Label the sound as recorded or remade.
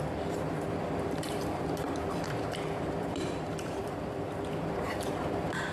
remade